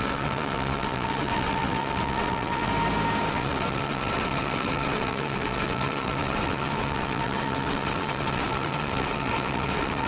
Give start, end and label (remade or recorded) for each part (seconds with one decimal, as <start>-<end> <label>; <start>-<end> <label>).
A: 0.0-2.7 remade; 2.7-3.3 recorded; 3.3-10.1 remade